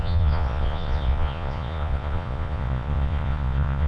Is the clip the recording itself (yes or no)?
no